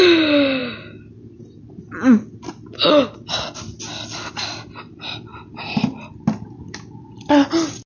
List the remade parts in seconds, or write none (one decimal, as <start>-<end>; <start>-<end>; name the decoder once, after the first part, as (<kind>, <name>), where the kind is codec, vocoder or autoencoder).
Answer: none